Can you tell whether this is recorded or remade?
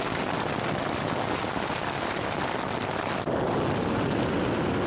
recorded